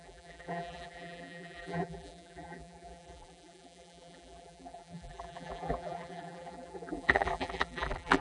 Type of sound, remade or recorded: remade